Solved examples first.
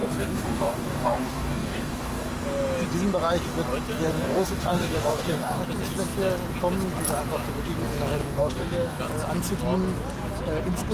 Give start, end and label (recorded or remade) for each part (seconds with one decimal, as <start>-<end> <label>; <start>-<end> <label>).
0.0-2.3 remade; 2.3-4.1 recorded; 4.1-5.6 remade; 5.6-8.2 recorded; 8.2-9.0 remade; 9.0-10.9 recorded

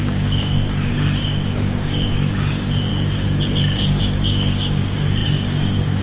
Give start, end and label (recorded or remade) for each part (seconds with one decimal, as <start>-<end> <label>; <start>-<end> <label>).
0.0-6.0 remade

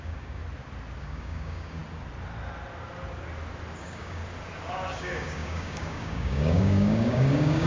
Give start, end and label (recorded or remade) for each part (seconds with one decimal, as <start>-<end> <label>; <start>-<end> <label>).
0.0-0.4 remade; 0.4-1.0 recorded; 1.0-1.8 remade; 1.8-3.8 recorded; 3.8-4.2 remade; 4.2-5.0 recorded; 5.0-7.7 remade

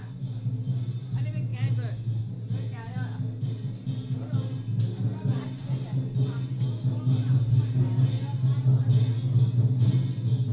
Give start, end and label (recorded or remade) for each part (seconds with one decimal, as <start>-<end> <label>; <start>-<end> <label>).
0.0-10.5 recorded

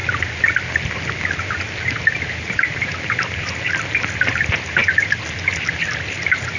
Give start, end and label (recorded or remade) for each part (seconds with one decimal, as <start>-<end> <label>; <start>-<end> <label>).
0.0-6.6 recorded

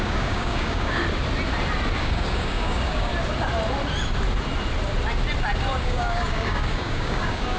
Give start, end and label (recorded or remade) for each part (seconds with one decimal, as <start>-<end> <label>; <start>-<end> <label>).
0.0-1.0 remade; 1.0-2.0 recorded; 2.0-3.1 remade; 3.1-5.8 recorded; 5.8-7.6 remade

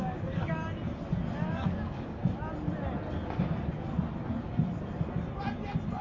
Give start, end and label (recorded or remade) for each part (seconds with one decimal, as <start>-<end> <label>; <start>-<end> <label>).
0.0-0.6 remade; 0.6-1.5 recorded; 1.5-2.2 remade; 2.2-6.0 recorded